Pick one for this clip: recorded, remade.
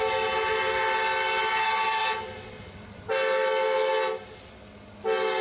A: recorded